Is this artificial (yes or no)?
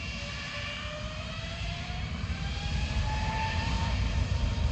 yes